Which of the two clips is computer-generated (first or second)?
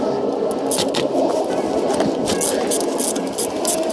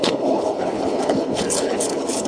second